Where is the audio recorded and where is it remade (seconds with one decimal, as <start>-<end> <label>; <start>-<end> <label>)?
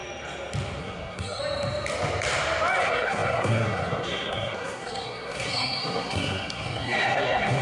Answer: 0.0-0.8 recorded; 0.8-1.4 remade; 1.4-2.8 recorded; 2.8-7.6 remade